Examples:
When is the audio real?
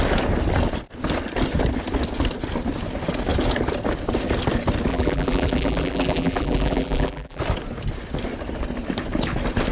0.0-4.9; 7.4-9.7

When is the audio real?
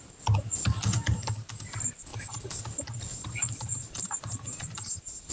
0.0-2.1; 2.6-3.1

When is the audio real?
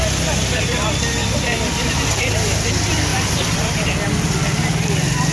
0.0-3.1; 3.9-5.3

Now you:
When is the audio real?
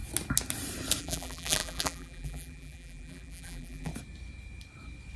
0.0-1.0; 3.9-5.2